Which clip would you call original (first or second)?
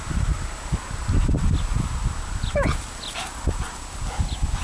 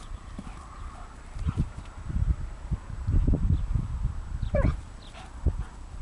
first